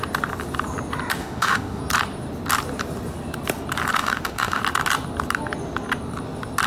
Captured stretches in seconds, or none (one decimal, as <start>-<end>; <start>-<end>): 0.0-1.2; 1.8-4.0; 4.6-6.7